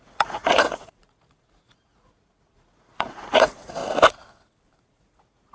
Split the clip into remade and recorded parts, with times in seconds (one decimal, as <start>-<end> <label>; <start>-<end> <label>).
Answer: 0.0-3.8 remade; 3.8-4.8 recorded; 4.8-5.5 remade